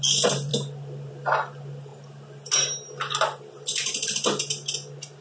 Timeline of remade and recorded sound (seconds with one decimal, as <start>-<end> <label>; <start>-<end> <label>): 0.0-5.2 recorded